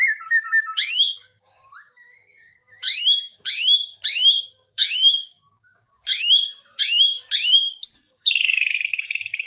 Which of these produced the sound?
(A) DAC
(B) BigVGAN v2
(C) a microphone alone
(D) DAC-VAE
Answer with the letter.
A